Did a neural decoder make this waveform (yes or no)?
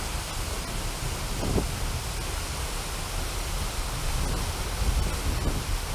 no